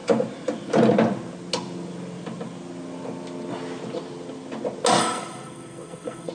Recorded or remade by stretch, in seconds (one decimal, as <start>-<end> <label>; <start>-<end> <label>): 0.0-5.0 recorded; 5.0-6.3 remade